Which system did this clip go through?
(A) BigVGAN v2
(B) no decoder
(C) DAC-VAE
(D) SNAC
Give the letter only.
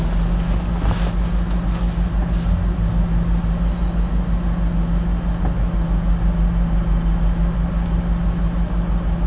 B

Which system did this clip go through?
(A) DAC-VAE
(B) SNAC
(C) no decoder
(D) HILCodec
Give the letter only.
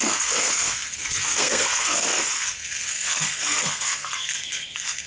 B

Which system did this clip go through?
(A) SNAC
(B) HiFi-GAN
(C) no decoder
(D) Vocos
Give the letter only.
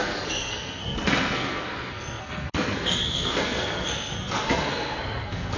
A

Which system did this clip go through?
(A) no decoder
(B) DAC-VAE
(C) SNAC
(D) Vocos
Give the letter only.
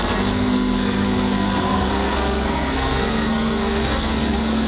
C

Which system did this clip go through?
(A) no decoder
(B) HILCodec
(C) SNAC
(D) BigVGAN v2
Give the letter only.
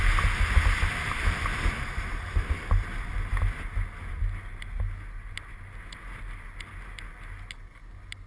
A